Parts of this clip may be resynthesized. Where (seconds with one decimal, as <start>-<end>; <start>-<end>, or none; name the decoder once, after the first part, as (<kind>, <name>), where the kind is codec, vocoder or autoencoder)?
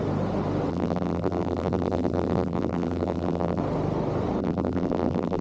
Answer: 0.7-3.6 (vocoder, BigVGAN v2); 4.4-5.4